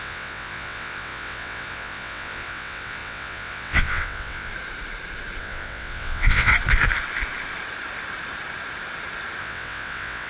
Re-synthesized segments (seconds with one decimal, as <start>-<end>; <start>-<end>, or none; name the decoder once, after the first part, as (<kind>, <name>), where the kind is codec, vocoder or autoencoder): 0.0-4.5 (vocoder, WaveNeXt); 5.4-6.5; 9.4-10.3